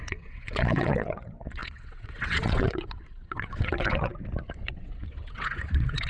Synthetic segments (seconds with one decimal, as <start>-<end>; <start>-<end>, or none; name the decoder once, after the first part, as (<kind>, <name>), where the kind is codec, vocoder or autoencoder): 0.0-4.1 (vocoder, WaveNeXt); 4.6-6.1